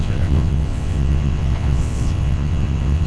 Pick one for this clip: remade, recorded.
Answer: remade